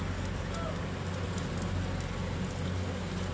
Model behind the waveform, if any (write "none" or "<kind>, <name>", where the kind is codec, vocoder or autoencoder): none